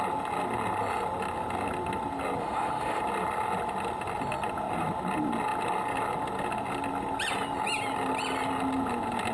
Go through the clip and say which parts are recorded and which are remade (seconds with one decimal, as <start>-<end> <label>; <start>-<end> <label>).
0.0-2.4 recorded; 2.4-3.0 remade; 3.0-9.3 recorded